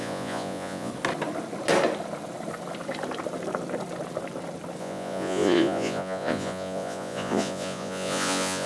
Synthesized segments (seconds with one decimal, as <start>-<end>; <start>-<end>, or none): 0.0-0.9; 4.8-8.7